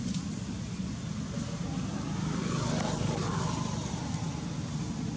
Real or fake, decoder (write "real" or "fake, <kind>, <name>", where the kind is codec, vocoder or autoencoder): real